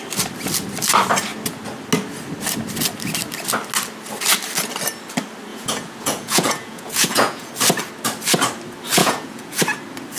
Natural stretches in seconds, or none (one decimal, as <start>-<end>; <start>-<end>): 0.0-5.5; 7.5-9.0; 9.6-10.2